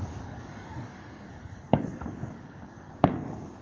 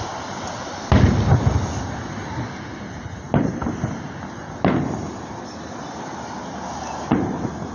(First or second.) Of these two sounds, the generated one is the first